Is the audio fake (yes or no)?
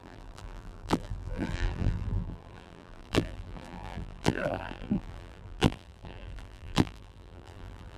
yes